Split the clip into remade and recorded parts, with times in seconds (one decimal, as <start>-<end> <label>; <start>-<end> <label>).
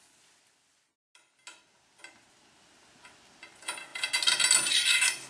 0.0-5.3 recorded